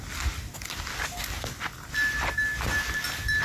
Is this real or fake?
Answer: real